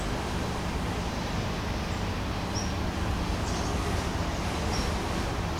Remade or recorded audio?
recorded